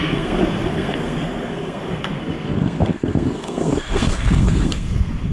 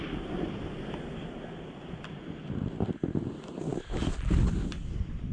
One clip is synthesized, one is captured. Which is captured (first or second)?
second